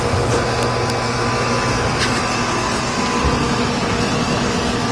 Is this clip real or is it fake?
real